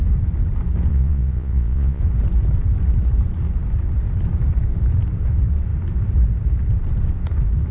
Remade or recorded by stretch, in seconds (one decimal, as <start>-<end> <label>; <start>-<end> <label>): 0.0-0.9 recorded; 0.9-2.0 remade; 2.0-7.7 recorded